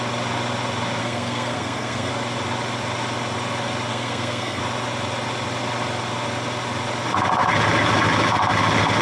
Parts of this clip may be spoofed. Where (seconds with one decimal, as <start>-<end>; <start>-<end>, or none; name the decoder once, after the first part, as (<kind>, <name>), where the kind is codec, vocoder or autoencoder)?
1.0-2.1 (codec, SNAC); 3.9-4.6

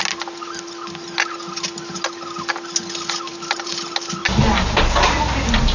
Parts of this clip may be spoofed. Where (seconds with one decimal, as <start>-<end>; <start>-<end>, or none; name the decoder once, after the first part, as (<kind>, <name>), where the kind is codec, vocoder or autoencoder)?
none

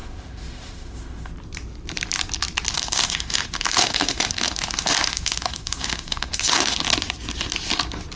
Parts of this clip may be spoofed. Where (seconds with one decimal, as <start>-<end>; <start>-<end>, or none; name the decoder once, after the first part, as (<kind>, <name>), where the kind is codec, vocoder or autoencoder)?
0.0-1.3 (autoencoder, DAC-VAE); 2.7-6.8

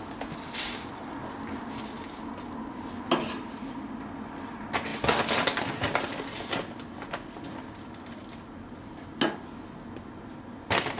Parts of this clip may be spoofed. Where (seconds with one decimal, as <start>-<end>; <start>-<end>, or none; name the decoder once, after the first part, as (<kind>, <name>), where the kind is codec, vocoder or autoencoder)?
none

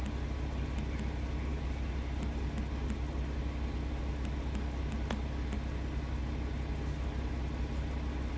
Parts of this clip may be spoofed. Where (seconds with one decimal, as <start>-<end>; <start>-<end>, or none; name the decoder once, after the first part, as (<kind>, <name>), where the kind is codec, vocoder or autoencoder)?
none

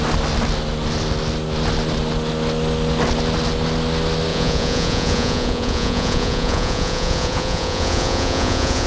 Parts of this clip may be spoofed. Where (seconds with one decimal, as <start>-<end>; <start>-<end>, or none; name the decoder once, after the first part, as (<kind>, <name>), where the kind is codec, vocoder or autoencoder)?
4.3-8.9 (vocoder, Vocos)

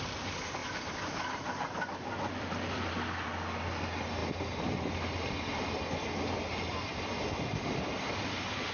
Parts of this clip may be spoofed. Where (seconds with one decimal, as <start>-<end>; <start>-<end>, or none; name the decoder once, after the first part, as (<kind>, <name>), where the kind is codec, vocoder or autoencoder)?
0.6-2.9 (vocoder, BigVGAN v2)